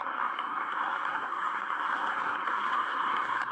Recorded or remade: remade